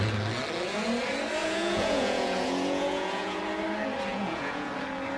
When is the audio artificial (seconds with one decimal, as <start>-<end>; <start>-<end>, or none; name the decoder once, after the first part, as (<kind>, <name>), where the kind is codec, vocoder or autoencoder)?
1.4-3.4 (vocoder, Vocos); 4.1-4.7